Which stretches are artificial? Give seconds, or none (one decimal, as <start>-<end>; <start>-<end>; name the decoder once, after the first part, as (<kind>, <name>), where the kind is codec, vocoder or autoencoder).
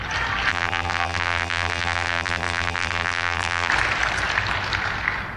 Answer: 0.5-3.7 (vocoder, BigVGAN v2)